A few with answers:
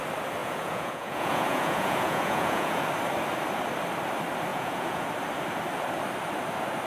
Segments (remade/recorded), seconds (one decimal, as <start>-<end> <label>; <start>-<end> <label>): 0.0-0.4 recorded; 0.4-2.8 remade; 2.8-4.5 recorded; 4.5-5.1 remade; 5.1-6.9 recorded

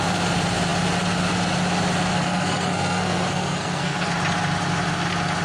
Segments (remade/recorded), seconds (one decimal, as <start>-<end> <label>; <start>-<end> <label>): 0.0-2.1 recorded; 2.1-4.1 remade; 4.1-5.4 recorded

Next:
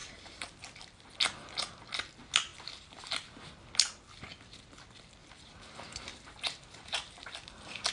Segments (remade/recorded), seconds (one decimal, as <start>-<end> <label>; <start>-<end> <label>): 0.0-0.6 remade; 0.6-5.2 recorded; 5.2-7.9 remade